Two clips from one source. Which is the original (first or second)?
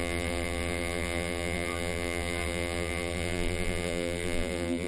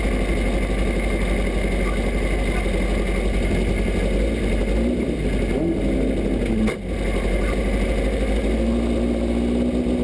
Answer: second